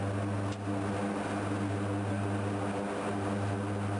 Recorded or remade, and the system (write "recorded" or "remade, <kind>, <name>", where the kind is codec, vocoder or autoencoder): recorded